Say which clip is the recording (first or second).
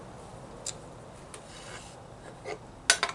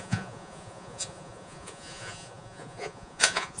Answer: first